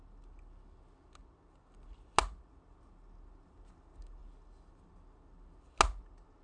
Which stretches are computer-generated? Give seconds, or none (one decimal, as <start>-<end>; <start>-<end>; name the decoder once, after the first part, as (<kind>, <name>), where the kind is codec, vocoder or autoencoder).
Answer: none